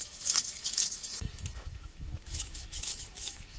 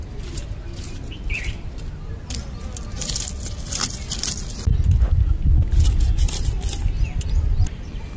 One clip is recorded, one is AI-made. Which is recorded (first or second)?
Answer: second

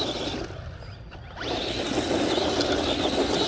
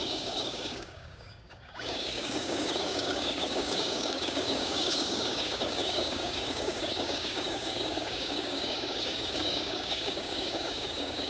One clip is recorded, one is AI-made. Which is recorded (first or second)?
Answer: first